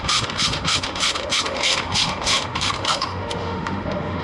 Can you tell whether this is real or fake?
fake